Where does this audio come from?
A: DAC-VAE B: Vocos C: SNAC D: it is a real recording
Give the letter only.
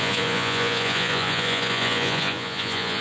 B